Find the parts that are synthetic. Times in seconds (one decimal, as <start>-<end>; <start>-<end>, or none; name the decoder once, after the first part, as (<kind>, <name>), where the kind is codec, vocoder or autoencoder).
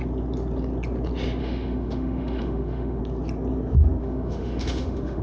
1.4-3.0 (autoencoder, DAC-VAE); 4.0-5.2